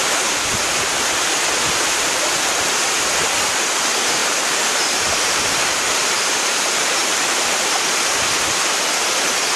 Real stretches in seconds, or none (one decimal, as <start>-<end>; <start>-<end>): 0.0-4.2; 7.7-9.6